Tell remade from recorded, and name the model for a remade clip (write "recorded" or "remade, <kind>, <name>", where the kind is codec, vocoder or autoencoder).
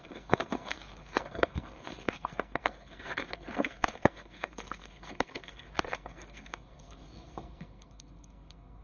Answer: remade, codec, SNAC